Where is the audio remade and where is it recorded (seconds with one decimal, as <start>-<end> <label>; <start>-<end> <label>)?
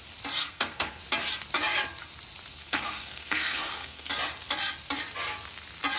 0.0-0.4 recorded; 0.4-1.0 remade; 1.0-2.5 recorded; 2.5-4.1 remade; 4.1-6.0 recorded